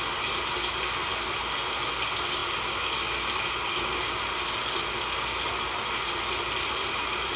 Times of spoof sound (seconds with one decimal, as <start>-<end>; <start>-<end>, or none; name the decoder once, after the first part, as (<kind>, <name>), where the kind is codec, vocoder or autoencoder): none